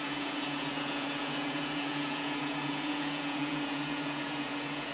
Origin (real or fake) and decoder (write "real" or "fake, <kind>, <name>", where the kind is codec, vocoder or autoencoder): fake, vocoder, Vocos